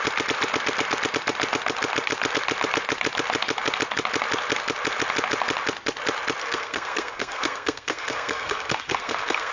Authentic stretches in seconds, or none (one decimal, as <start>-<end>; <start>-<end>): 0.0-6.4